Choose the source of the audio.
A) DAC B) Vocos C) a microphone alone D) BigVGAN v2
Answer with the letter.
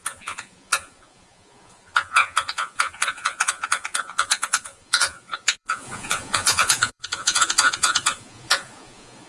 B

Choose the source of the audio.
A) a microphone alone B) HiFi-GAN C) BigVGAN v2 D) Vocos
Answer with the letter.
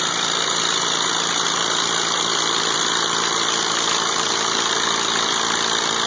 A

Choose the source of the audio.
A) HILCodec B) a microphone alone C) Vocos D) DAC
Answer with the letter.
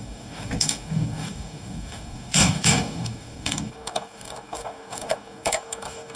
D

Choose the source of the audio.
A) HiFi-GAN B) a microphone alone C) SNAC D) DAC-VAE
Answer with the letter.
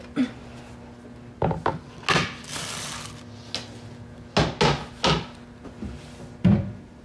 B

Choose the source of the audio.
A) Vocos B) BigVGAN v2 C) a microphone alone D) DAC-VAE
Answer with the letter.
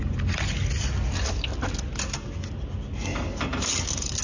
C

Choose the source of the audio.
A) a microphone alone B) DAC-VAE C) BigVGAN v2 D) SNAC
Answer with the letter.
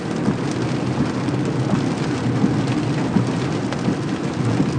A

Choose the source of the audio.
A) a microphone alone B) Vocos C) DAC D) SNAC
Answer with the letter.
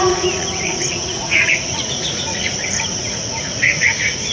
B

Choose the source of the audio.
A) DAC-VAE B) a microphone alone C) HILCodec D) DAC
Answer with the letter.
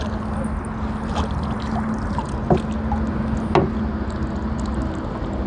B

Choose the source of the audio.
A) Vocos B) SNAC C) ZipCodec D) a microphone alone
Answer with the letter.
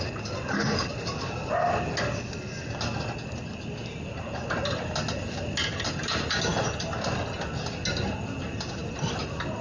D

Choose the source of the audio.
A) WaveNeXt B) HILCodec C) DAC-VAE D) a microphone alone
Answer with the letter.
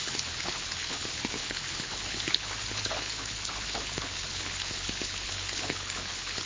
B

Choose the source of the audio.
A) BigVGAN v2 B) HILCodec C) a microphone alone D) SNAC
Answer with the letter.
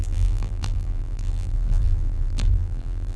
A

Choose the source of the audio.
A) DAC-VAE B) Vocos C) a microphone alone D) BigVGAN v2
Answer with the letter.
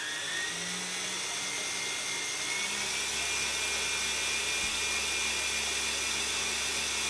C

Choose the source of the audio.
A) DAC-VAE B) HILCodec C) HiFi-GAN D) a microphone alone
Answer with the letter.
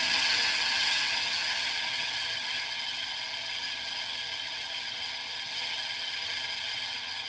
C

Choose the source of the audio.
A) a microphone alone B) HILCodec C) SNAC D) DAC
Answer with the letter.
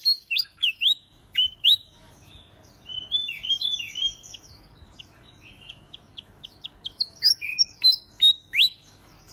D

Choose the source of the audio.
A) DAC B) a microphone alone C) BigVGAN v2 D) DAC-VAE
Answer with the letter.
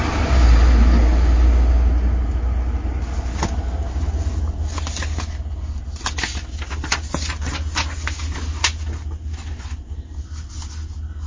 B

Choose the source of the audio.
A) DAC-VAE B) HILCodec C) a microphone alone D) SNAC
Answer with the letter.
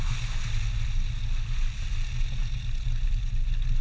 C